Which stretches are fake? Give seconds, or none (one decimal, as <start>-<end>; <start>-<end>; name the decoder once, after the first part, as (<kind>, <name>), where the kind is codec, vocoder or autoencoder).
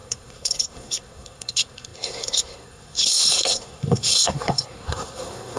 0.0-5.6 (codec, SNAC)